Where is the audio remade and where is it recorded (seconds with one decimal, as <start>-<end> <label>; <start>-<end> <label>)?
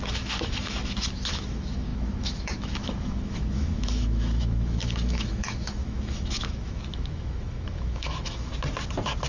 0.0-8.5 remade; 8.5-9.3 recorded